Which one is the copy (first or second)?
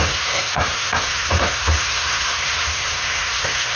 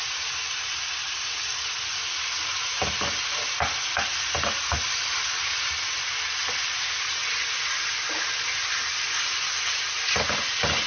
first